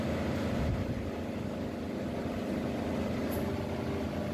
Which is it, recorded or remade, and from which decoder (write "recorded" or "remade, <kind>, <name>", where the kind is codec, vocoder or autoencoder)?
recorded